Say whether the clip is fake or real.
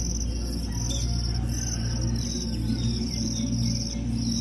real